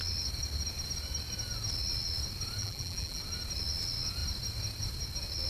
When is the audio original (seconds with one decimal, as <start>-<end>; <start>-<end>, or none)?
0.0-2.6; 3.2-5.5